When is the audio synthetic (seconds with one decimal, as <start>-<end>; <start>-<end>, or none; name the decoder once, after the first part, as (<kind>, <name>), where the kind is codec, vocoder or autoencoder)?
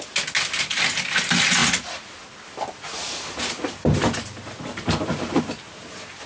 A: none